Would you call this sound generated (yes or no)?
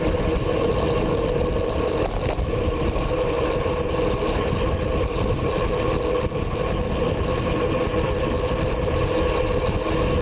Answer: no